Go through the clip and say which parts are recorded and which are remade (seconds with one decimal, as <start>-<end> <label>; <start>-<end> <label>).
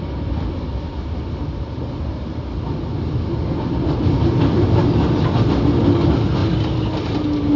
0.0-7.6 recorded